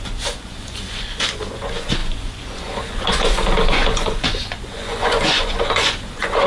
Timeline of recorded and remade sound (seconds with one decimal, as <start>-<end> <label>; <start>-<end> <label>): 0.0-6.5 remade